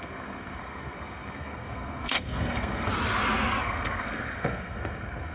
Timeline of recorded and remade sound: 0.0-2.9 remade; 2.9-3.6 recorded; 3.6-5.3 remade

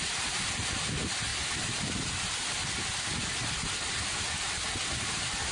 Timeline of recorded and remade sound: 0.0-5.5 recorded

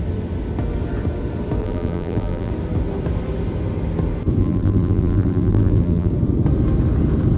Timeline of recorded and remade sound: 0.0-1.6 recorded; 1.6-2.5 remade; 2.5-4.4 recorded; 4.4-6.1 remade; 6.1-7.4 recorded

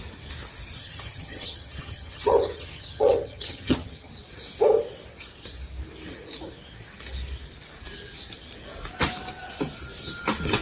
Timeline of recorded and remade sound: 0.0-0.8 recorded; 0.8-4.1 remade; 4.1-10.6 recorded

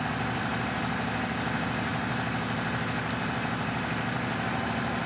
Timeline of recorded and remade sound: 0.0-5.1 recorded

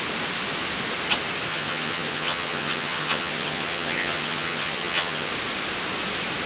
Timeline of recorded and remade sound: 0.0-1.5 recorded; 1.5-5.3 remade; 5.3-6.5 recorded

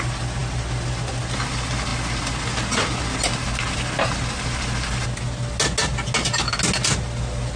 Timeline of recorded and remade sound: 0.0-7.6 recorded

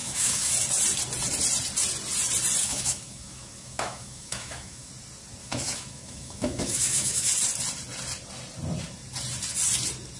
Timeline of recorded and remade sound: 0.0-0.5 remade; 0.5-2.6 recorded; 2.6-4.9 remade; 4.9-5.4 recorded; 5.4-7.3 remade; 7.3-10.2 recorded